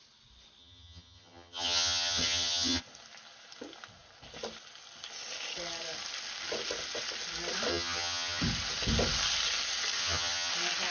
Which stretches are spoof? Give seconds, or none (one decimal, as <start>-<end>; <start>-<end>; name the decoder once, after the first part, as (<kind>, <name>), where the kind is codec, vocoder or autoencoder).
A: 0.6-2.8 (vocoder, HiFi-GAN); 7.7-8.4; 10.0-10.5